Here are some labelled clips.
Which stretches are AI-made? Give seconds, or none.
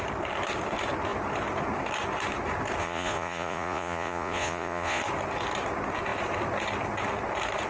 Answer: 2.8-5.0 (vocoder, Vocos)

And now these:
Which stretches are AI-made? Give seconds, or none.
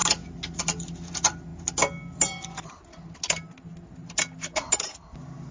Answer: none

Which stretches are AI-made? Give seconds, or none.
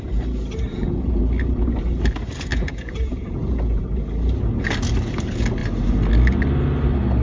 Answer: 0.7-1.2 (vocoder, Vocos); 2.5-3.8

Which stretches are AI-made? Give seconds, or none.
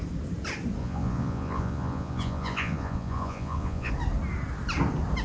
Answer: 0.8-3.9 (vocoder, Vocos)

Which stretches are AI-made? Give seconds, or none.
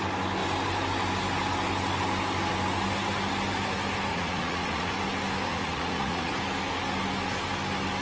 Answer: 4.1-4.9 (vocoder, Vocos); 5.5-6.3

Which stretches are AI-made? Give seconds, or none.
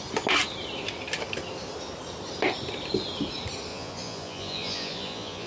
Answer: 3.7-5.5 (vocoder, Vocos)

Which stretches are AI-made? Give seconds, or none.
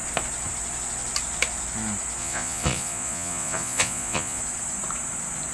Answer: 2.2-4.4 (vocoder, Vocos)